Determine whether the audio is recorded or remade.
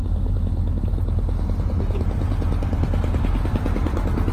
recorded